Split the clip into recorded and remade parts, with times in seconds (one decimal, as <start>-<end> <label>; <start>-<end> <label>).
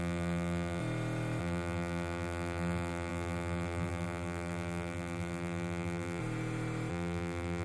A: 0.0-0.8 remade; 0.8-1.4 recorded; 1.4-6.2 remade; 6.2-6.9 recorded; 6.9-7.6 remade